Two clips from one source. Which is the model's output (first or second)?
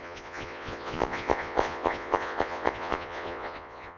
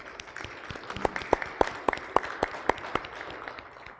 first